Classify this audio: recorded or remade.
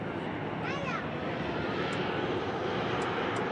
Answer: recorded